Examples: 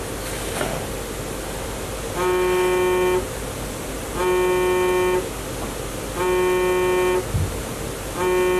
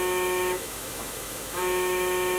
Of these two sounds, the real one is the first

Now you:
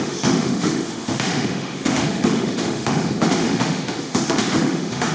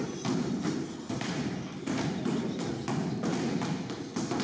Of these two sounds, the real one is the second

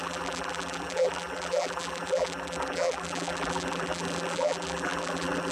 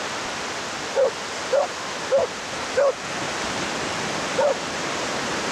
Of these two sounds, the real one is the second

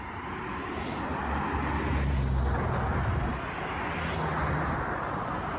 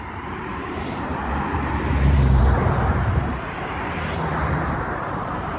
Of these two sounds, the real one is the first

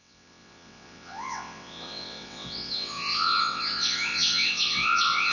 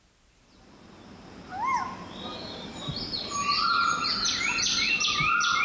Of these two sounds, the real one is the second